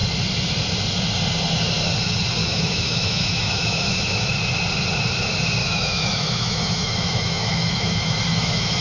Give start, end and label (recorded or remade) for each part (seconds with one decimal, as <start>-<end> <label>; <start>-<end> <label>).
0.0-2.4 recorded; 2.4-4.3 remade; 4.3-5.6 recorded; 5.6-8.8 remade